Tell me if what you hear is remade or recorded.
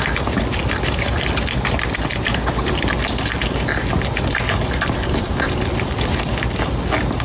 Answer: recorded